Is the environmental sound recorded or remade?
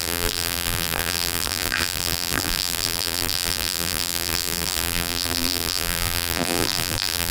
remade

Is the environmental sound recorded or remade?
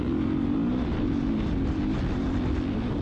recorded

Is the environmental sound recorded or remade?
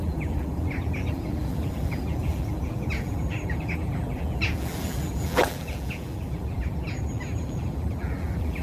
remade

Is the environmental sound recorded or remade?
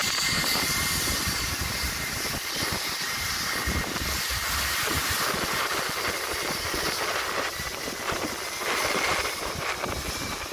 remade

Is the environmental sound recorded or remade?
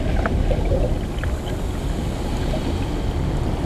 recorded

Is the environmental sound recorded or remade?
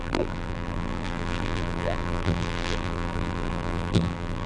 remade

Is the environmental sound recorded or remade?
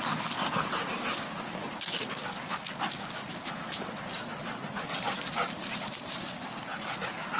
recorded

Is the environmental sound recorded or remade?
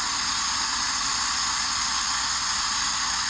recorded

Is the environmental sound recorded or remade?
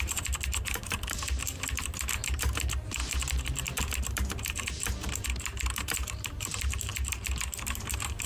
remade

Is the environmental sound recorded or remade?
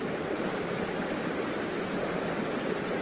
recorded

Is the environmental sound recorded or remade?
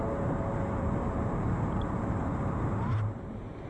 remade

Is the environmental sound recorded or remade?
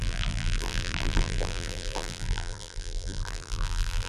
remade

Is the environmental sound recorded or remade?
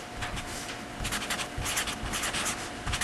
recorded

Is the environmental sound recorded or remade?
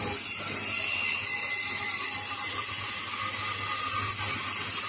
recorded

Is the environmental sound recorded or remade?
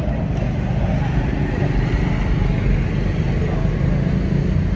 recorded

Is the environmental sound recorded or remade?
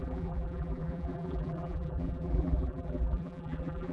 remade